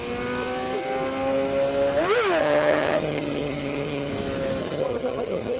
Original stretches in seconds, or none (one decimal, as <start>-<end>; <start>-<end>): 0.0-2.4; 4.1-4.6

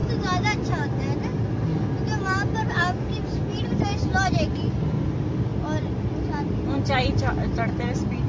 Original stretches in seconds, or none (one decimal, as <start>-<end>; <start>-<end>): 0.0-8.3

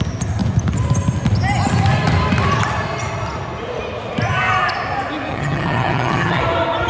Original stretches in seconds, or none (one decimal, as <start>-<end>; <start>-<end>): 0.0-5.3; 6.4-6.9